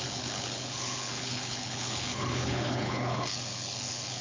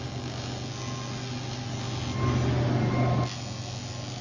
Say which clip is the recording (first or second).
second